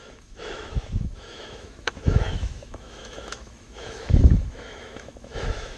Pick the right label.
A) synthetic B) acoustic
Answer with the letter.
A